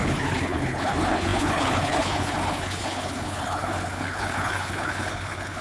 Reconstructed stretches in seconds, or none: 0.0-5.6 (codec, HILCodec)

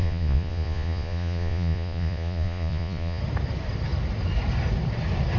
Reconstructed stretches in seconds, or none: 0.0-3.2 (vocoder, Vocos)